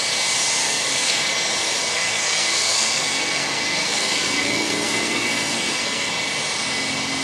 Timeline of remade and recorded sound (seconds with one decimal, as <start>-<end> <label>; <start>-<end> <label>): 0.0-0.6 recorded; 0.6-1.2 remade; 1.2-1.8 recorded; 1.8-6.1 remade; 6.1-7.2 recorded